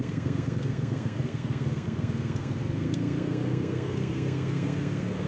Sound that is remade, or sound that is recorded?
remade